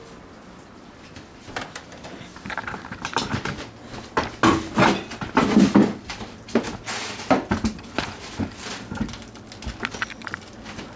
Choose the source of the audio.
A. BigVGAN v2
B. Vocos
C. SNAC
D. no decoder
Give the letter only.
D